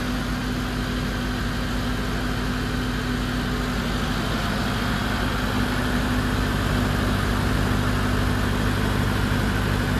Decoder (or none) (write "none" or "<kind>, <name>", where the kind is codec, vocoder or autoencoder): none